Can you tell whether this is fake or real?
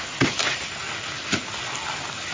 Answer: real